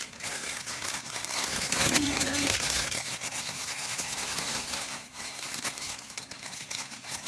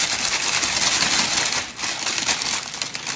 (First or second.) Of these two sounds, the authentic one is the second